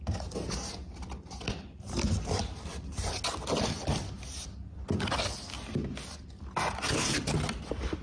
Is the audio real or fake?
real